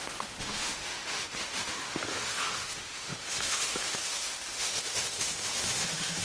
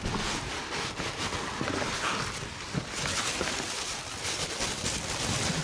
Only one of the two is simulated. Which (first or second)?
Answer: first